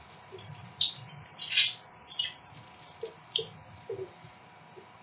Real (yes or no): no